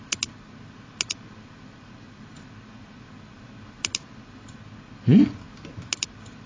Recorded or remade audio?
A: recorded